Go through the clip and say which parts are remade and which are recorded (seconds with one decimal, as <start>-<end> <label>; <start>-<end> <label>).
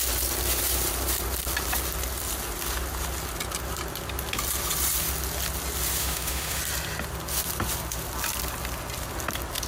0.0-6.0 recorded; 6.0-6.6 remade; 6.6-9.7 recorded